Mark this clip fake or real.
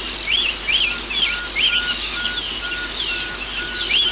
real